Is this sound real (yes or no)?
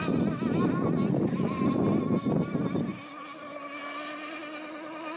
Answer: yes